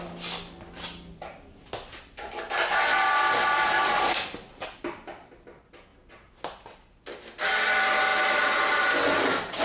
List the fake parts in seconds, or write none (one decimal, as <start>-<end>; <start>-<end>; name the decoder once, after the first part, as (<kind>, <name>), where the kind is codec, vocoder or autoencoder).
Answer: 8.1-8.7 (vocoder, BigVGAN v2)

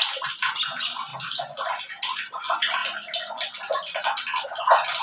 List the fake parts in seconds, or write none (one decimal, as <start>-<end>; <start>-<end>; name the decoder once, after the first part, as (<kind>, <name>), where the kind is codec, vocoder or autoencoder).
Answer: none

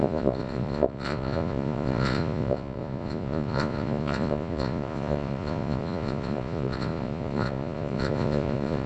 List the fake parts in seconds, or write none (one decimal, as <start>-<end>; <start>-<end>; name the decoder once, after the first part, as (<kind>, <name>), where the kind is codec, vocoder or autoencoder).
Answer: 0.0-8.9 (vocoder, Vocos)

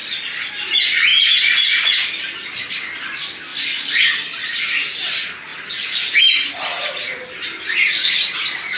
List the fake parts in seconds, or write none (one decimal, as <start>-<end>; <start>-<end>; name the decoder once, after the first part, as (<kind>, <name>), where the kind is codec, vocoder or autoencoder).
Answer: 0.0-0.7 (vocoder, BigVGAN v2); 1.1-2.7; 3.5-4.1

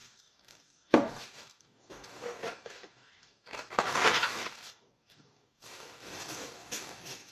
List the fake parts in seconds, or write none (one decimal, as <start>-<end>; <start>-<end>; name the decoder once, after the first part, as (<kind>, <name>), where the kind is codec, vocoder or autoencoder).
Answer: 0.0-7.3 (codec, DAC)